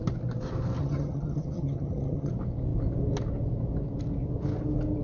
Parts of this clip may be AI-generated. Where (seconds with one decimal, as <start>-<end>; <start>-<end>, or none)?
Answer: 0.8-2.3